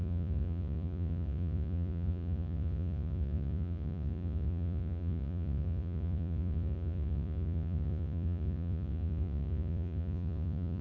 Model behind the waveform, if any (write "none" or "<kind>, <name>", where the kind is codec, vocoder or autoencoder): vocoder, Vocos